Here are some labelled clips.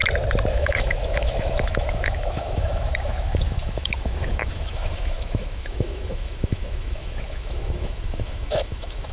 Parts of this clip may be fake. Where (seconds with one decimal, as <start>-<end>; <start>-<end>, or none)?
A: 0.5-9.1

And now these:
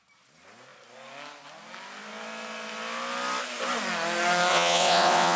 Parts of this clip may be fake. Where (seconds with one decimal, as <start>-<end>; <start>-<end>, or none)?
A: 4.5-5.4

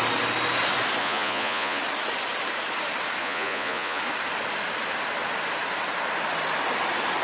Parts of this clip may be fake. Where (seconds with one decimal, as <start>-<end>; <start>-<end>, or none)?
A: 1.0-1.8; 3.2-4.0

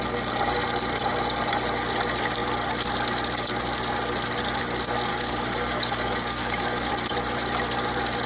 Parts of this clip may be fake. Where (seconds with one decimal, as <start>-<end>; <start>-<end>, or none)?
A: 5.1-6.9

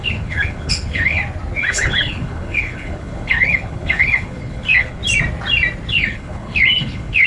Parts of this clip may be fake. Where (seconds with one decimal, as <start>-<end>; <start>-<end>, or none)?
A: 0.0-1.2; 1.7-5.0; 5.9-7.3

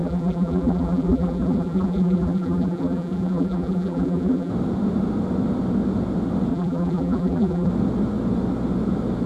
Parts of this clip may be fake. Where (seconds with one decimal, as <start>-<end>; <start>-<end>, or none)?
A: 0.0-4.5; 6.5-7.7

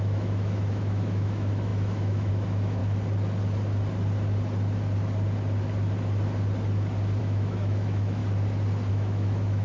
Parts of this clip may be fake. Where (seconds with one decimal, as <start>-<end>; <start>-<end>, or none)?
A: 0.0-2.8; 7.2-8.2; 8.9-9.6

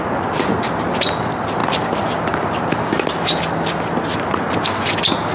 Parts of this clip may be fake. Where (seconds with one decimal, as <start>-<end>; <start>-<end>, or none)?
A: none